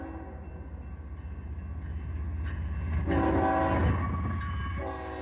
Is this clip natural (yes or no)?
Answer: yes